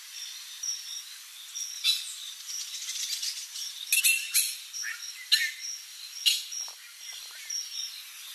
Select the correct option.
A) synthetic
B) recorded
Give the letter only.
B